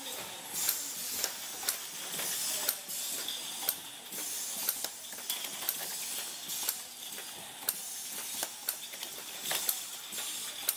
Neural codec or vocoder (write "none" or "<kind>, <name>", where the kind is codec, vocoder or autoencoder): none